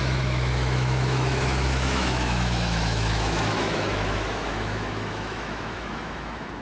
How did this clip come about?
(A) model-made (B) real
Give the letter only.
A